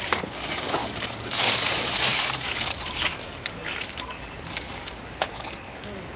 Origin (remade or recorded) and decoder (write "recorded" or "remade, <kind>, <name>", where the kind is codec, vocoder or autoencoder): remade, codec, DAC